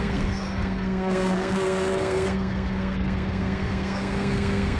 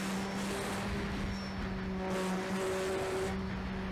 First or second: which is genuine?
second